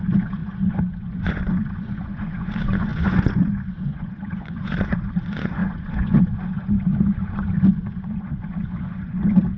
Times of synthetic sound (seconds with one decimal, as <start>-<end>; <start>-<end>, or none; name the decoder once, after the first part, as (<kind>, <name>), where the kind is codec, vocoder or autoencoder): 0.0-9.6 (vocoder, Vocos)